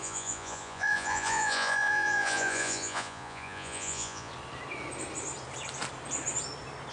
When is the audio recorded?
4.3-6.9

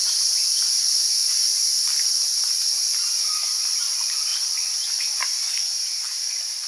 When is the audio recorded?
4.3-4.9